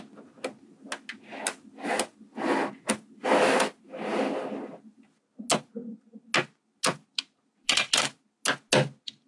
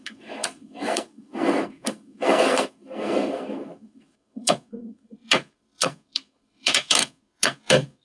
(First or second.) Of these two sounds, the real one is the first